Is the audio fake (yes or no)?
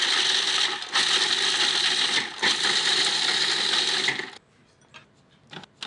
no